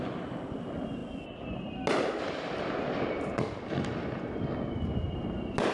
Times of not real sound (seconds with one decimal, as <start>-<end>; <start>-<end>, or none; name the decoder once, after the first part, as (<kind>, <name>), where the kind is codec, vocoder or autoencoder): none